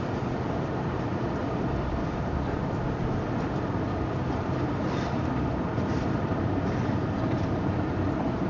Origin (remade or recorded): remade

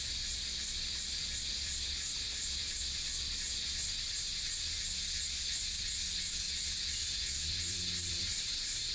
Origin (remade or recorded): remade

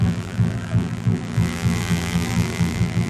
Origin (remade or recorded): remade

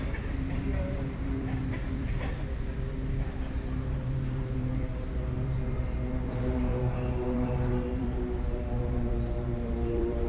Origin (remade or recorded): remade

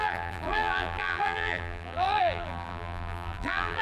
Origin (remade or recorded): remade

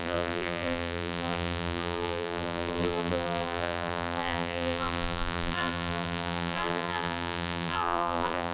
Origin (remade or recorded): remade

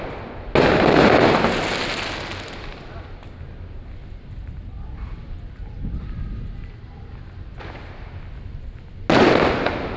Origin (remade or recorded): recorded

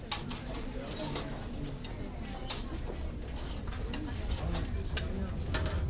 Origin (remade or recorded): recorded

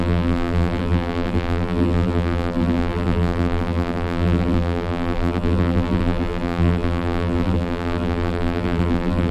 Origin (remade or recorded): remade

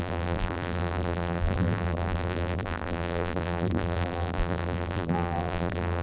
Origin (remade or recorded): remade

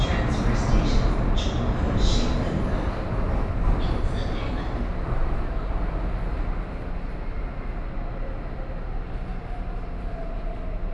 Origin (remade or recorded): recorded